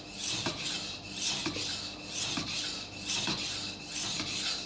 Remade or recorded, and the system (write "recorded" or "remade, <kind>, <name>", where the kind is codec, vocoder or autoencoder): recorded